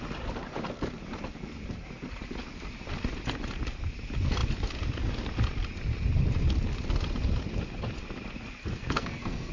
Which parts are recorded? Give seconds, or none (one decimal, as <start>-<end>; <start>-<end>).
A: 0.0-8.6